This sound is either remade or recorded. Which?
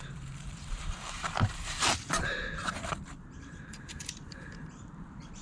remade